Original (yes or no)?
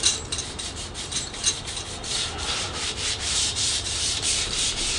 no